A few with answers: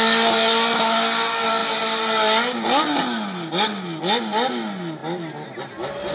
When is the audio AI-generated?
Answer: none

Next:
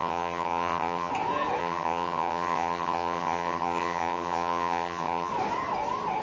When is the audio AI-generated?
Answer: 0.0-1.1 (vocoder, HiFi-GAN); 1.6-5.3

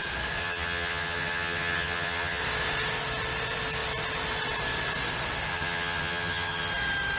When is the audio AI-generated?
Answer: 0.4-2.4 (vocoder, HiFi-GAN); 5.5-6.7

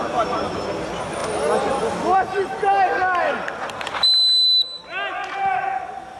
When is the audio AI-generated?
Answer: none

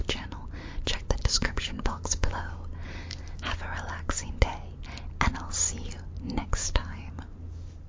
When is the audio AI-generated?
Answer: 1.2-2.3 (codec, DAC); 6.6-7.1

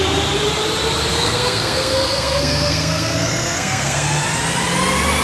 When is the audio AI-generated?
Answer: 1.1-4.2 (codec, SNAC)

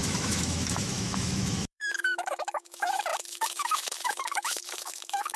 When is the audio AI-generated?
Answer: 0.0-5.4 (autoencoder, DAC-VAE)